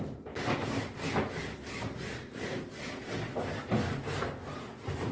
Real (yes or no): yes